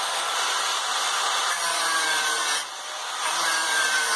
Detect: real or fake fake